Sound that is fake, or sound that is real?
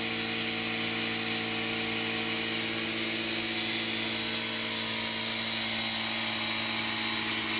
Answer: real